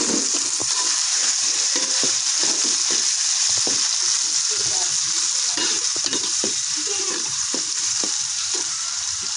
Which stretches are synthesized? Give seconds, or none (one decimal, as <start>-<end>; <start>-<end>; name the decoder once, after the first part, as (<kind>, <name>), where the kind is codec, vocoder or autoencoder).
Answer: 0.6-2.5 (vocoder, BigVGAN v2); 5.6-9.4